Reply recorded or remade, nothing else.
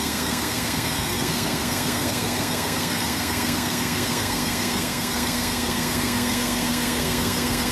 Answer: remade